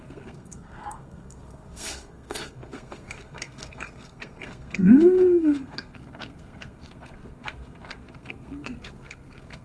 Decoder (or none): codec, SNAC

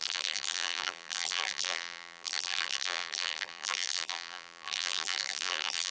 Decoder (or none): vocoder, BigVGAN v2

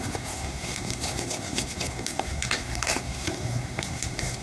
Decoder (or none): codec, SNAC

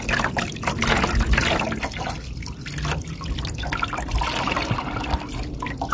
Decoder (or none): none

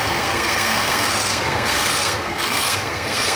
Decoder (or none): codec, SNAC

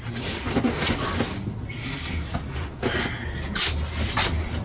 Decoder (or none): none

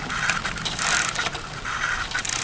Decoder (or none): none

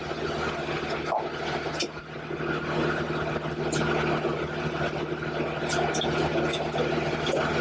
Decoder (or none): none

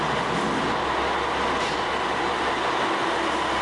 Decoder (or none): none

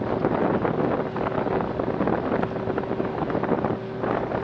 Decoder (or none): none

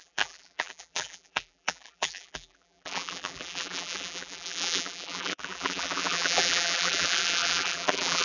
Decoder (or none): vocoder, BigVGAN v2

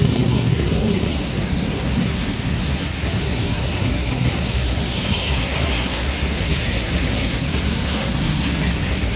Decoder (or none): codec, SNAC